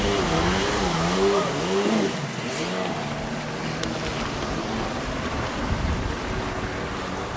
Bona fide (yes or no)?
yes